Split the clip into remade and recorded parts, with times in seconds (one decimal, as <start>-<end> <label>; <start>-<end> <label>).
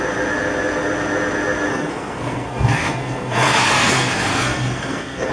0.0-1.7 recorded; 1.7-5.3 remade